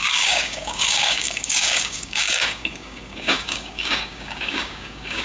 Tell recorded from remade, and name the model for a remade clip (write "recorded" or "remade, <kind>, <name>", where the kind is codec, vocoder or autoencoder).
remade, codec, DAC